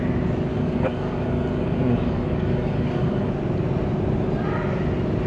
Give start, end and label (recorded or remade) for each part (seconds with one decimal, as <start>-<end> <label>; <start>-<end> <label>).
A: 0.0-0.5 recorded; 0.5-3.3 remade; 3.3-5.3 recorded